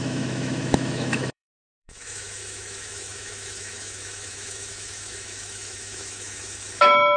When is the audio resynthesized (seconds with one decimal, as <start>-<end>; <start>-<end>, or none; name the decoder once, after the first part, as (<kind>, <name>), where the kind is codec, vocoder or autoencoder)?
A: 0.0-7.2 (autoencoder, DAC-VAE)